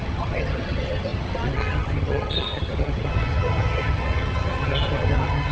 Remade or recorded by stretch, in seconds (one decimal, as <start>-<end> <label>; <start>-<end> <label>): 0.0-5.5 remade